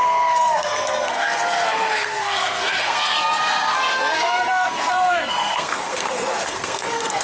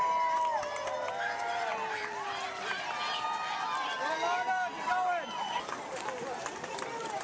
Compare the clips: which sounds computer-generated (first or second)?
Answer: first